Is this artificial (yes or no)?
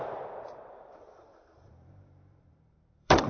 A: yes